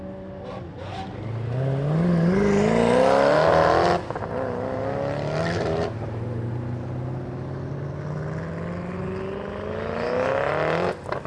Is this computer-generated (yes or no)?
no